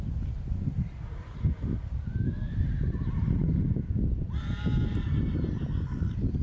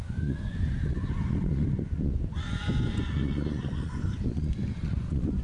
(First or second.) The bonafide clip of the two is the first